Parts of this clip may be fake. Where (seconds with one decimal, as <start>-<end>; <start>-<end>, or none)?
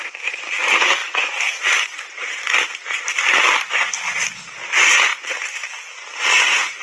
none